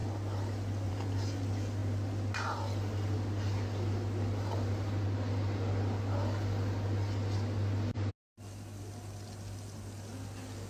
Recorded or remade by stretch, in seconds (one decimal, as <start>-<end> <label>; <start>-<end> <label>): 0.0-10.7 recorded